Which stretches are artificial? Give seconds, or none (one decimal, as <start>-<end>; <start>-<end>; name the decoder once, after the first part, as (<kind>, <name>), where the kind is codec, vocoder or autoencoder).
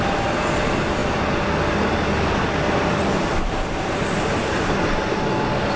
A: none